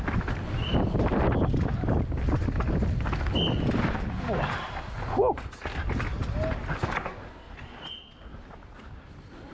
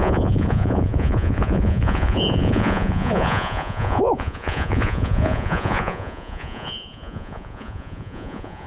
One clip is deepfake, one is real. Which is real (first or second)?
first